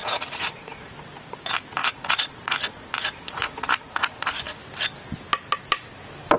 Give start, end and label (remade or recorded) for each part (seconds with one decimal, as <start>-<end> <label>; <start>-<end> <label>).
0.0-0.9 remade; 0.9-1.8 recorded; 1.8-4.6 remade; 4.6-6.4 recorded